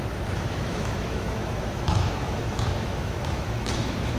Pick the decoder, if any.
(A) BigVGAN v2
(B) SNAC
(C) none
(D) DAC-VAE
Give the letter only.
D